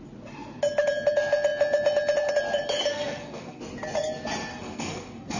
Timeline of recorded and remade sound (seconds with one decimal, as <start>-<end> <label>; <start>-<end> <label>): 0.0-2.9 recorded; 2.9-3.6 remade; 3.6-4.5 recorded; 4.5-5.4 remade